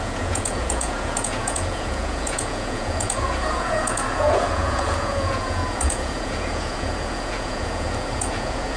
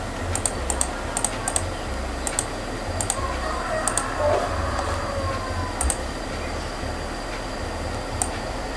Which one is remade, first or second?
first